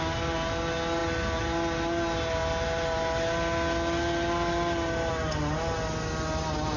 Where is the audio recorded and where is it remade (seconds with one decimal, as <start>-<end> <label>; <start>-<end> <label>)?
0.0-6.8 recorded